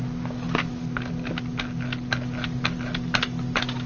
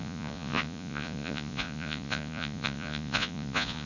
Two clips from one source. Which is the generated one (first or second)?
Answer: second